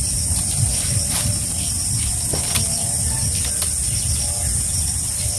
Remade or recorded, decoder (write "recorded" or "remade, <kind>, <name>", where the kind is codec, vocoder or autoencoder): recorded